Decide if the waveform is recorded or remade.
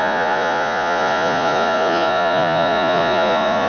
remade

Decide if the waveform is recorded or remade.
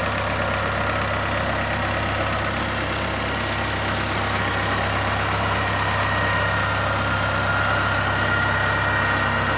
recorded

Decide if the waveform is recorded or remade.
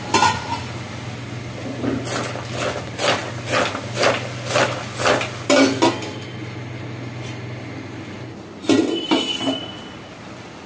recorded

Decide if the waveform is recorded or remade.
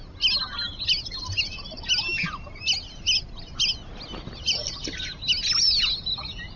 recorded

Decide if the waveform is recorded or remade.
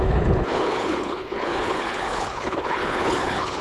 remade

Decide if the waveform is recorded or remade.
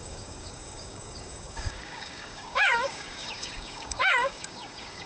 remade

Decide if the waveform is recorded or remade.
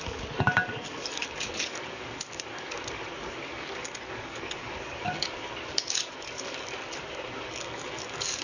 remade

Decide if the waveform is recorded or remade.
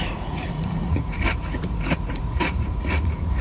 remade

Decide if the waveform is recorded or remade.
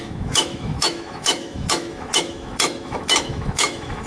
remade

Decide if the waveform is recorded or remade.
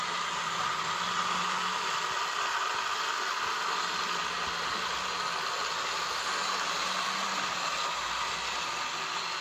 recorded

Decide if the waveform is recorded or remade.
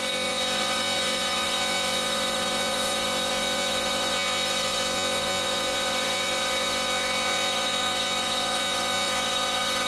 remade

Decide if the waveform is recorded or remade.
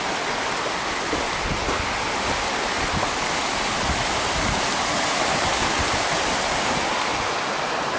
recorded